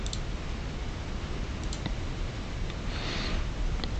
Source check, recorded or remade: recorded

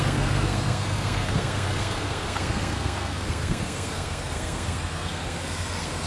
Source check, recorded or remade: remade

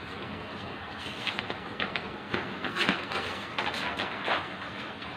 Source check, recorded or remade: remade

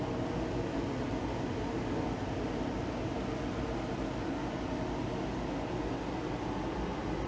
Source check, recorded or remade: recorded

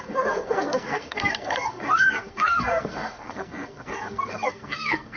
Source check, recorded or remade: remade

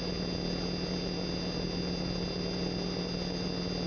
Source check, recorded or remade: recorded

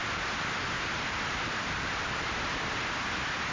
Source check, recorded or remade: recorded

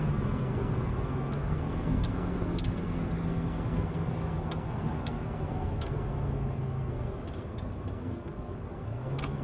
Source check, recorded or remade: remade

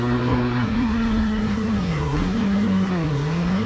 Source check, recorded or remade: remade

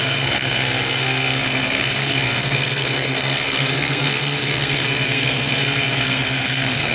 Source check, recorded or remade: remade